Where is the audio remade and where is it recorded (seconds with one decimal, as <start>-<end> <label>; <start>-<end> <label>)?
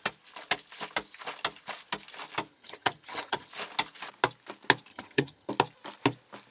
0.0-2.5 recorded; 2.5-3.5 remade; 3.5-4.9 recorded; 4.9-5.5 remade; 5.5-6.5 recorded